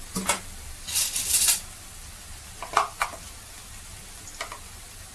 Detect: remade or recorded recorded